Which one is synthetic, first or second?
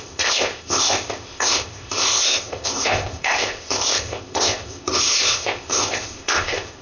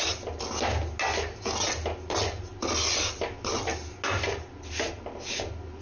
first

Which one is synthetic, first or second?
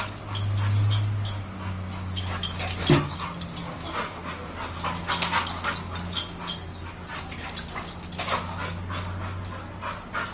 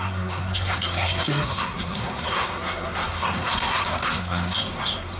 second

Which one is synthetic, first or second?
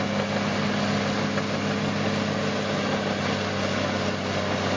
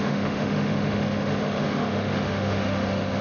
second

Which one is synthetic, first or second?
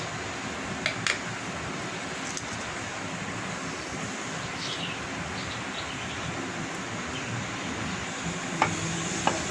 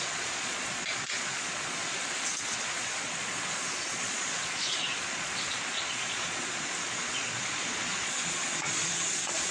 second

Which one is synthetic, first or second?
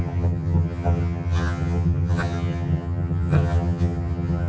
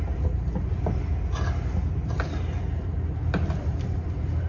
first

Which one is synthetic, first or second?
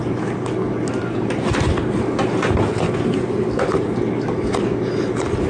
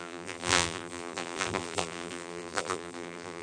second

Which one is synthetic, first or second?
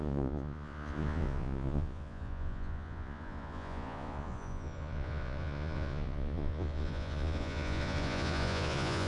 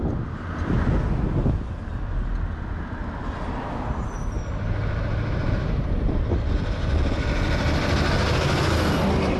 first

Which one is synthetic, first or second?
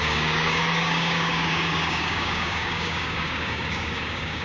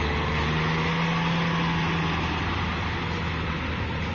first